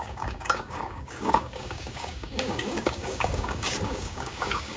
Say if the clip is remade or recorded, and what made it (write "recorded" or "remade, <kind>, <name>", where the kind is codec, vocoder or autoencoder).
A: remade, codec, DAC